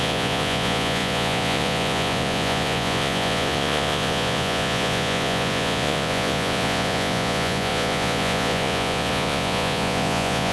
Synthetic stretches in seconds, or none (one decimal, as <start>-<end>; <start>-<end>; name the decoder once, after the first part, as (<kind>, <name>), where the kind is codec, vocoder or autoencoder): 0.0-10.5 (vocoder, Vocos)